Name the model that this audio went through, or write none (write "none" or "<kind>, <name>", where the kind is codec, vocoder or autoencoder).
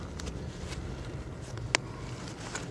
none